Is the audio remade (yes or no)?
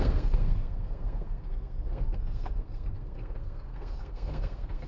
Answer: yes